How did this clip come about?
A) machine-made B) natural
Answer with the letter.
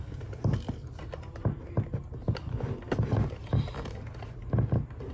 B